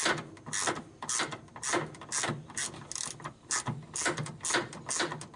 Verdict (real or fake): real